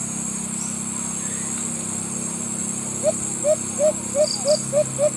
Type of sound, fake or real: real